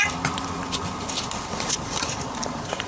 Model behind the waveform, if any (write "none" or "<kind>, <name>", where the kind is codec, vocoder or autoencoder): vocoder, BigVGAN v2